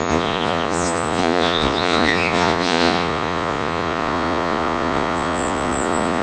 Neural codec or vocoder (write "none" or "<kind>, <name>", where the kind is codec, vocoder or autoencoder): vocoder, Vocos